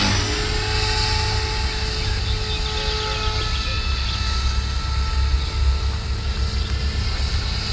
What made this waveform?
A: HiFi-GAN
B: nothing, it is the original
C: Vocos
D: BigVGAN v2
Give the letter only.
B